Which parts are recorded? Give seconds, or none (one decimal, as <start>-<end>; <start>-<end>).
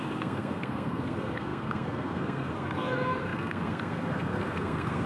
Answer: none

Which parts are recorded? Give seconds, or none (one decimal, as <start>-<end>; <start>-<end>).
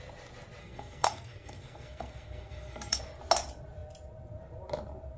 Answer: 0.0-0.6; 3.0-5.2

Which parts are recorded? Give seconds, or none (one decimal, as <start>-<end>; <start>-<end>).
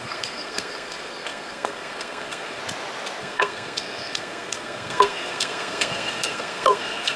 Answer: 2.6-3.2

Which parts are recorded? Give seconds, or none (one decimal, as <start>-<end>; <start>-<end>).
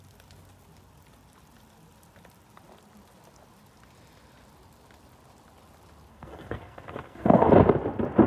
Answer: 0.0-6.1; 7.5-8.3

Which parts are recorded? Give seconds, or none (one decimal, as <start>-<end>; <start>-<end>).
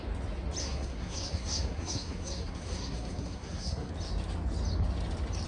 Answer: 0.0-0.6; 3.9-5.5